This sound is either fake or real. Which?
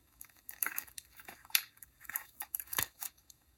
fake